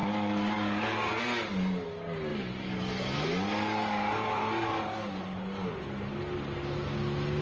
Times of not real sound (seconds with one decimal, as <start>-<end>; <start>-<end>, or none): 0.0-1.1; 2.3-5.7

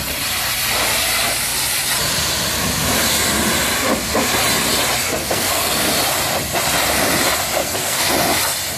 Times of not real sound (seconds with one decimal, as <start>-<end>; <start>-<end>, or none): 5.0-5.9; 7.6-8.1

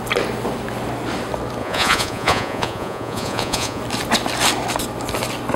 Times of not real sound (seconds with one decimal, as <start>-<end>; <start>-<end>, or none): 1.6-3.8